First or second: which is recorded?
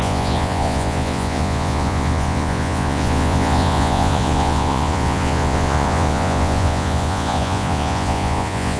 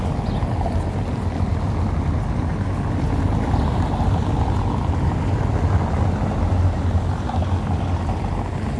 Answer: second